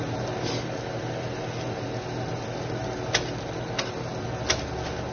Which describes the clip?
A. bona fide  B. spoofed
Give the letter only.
A